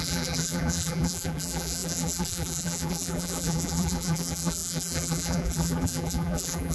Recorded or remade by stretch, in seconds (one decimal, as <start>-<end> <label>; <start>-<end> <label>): 0.0-6.7 remade